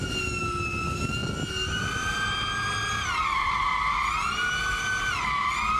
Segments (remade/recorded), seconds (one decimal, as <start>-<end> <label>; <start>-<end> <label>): 0.0-5.8 recorded